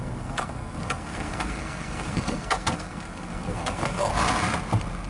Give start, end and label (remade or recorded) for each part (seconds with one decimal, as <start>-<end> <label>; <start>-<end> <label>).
0.0-4.1 remade; 4.1-5.1 recorded